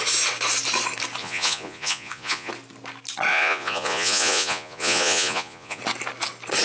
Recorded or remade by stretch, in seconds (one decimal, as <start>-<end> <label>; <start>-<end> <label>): 0.0-1.2 recorded; 1.2-2.5 remade; 2.5-3.3 recorded; 3.3-5.8 remade; 5.8-6.6 recorded